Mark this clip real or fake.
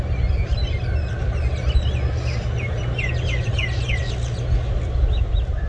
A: real